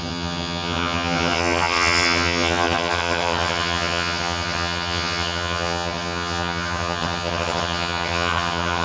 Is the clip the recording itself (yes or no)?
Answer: no